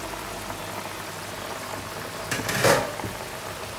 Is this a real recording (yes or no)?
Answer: yes